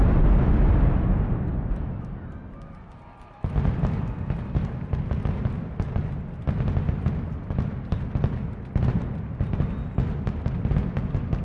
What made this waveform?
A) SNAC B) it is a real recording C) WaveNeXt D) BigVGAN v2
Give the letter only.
B